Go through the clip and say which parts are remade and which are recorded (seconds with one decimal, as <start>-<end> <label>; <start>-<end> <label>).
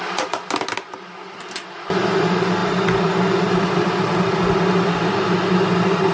0.0-6.1 recorded